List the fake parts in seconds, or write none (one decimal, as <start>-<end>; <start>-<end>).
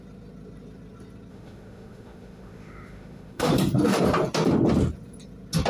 1.3-3.5